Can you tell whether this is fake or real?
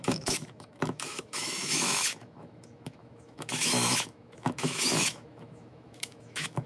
fake